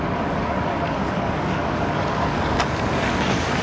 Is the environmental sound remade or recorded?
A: remade